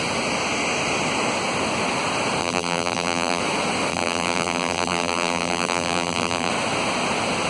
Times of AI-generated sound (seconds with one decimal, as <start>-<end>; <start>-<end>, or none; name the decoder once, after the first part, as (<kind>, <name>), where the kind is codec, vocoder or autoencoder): 2.4-3.4 (vocoder, BigVGAN v2); 3.9-6.5